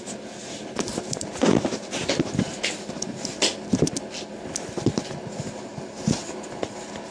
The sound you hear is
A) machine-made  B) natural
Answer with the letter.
B